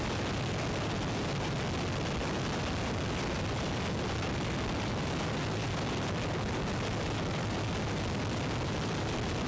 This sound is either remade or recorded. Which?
recorded